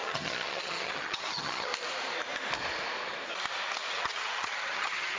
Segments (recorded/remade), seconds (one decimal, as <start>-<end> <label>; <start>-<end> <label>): 0.0-1.7 remade; 1.7-3.9 recorded; 3.9-5.2 remade